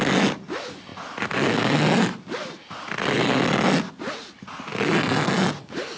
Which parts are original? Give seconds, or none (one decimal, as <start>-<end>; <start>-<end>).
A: 0.0-6.0